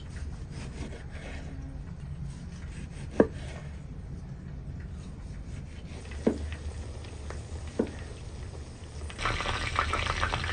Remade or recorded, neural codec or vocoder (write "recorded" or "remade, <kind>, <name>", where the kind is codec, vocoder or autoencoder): recorded